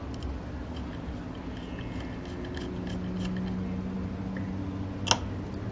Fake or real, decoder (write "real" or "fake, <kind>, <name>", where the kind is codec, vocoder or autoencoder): real